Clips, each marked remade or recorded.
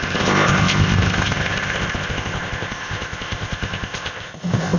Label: remade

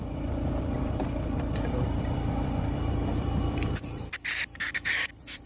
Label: recorded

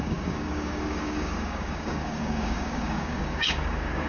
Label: remade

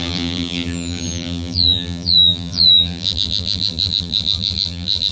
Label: remade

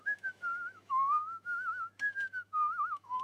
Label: remade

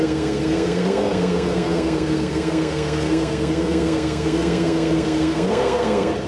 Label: remade